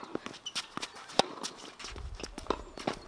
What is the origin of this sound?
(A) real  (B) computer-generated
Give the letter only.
A